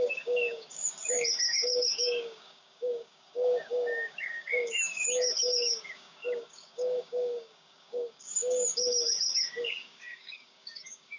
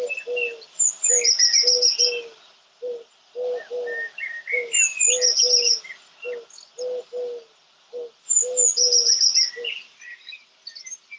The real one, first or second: second